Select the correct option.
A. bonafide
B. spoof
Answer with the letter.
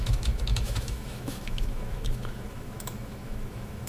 B